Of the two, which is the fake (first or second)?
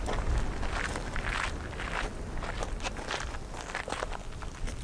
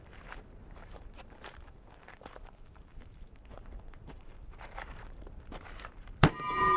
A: second